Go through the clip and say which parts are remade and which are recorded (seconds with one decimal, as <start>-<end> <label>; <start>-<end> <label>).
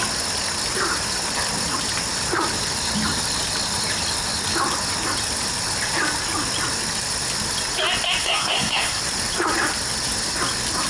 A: 0.0-8.2 recorded; 8.2-9.0 remade; 9.0-10.9 recorded